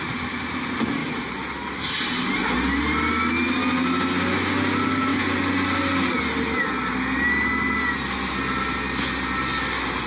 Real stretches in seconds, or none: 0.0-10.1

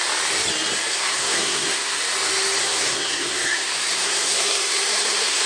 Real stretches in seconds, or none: 0.0-0.9; 2.0-2.6

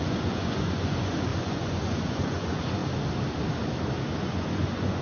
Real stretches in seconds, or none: 2.8-4.2